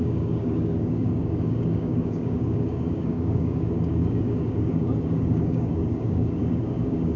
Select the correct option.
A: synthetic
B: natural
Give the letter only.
A